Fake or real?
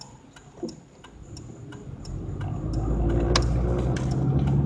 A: real